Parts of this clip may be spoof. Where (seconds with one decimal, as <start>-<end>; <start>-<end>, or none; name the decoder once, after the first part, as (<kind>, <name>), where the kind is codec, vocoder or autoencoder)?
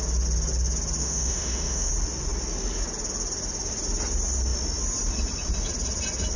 1.0-1.9 (autoencoder, DAC-VAE)